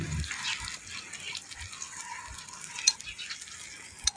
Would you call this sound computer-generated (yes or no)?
no